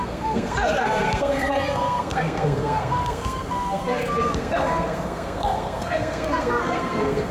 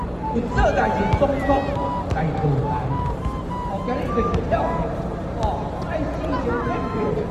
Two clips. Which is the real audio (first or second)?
second